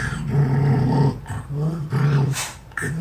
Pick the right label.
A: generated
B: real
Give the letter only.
A